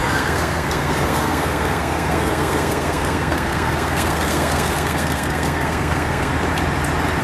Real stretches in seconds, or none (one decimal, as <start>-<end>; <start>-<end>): 6.3-7.2